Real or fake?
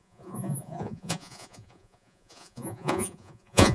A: fake